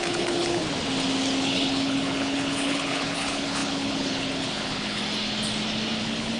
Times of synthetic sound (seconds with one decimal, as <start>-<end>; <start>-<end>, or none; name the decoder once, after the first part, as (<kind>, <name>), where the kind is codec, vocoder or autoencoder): 0.0-0.6 (codec, HILCodec); 1.4-5.0; 6.0-6.4